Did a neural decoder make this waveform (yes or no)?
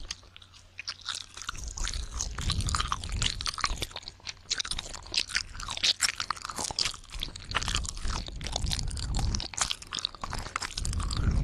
no